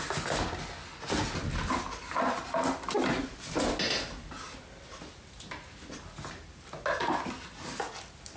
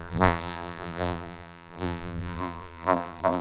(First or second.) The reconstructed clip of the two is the second